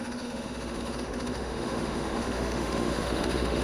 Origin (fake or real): fake